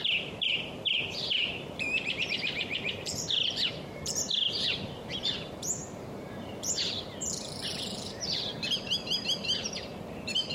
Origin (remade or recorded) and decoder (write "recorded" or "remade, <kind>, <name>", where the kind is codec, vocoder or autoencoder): remade, vocoder, BigVGAN v2